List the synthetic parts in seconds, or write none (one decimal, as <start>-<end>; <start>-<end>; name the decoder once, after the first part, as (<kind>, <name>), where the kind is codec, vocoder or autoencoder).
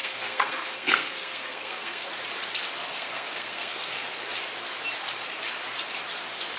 0.0-2.1 (codec, SNAC); 2.9-4.3